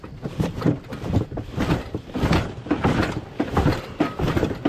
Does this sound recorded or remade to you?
remade